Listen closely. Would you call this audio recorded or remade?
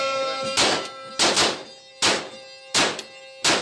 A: recorded